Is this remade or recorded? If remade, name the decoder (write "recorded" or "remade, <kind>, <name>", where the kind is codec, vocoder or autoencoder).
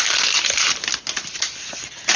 recorded